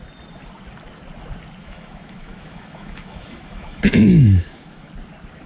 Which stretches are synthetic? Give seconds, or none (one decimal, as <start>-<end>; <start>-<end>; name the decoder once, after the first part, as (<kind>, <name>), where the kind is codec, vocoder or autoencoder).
1.6-4.9 (autoencoder, DAC-VAE)